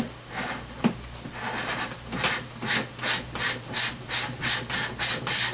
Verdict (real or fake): real